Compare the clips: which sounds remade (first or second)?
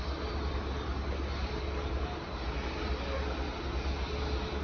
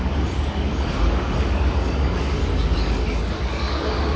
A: second